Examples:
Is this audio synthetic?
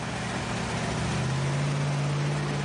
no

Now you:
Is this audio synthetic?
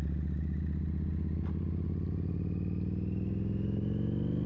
no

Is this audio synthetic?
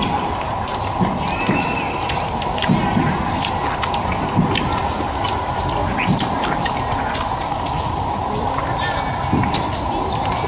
no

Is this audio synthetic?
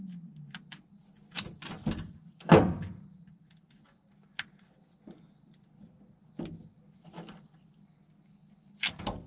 no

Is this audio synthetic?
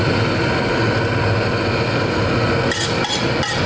no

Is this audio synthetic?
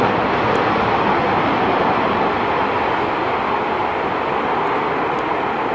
no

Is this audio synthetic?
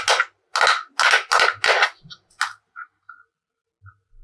no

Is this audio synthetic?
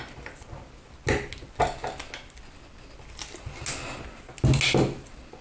no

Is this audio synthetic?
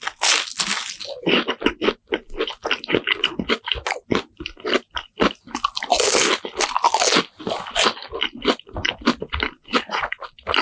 no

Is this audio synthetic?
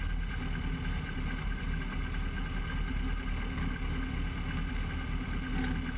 no